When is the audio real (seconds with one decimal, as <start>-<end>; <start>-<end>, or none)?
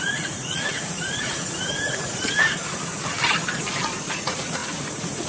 2.9-4.1